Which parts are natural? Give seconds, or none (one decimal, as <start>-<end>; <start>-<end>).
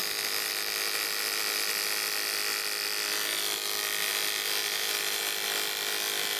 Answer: 0.5-4.6; 5.2-6.4